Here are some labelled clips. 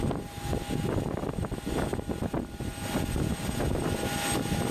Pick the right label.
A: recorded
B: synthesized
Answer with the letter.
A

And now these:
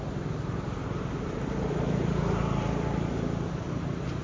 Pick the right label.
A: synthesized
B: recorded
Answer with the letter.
A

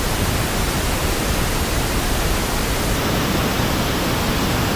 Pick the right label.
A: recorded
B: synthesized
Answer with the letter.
A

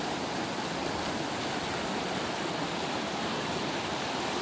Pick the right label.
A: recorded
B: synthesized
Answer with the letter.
A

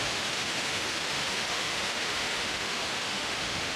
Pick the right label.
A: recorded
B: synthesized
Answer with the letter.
B